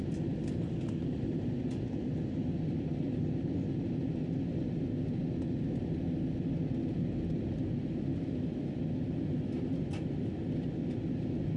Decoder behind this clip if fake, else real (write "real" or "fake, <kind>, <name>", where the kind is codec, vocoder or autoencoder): real